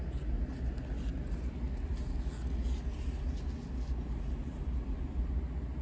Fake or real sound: real